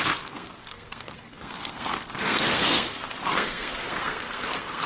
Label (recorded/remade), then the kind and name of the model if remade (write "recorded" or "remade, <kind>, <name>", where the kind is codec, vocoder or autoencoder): remade, codec, SNAC